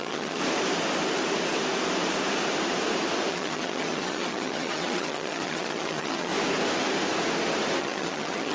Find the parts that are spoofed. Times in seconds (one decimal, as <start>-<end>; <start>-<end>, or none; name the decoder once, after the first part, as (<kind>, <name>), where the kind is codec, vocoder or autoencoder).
0.0-0.4 (vocoder, HiFi-GAN); 3.3-6.3; 7.8-8.5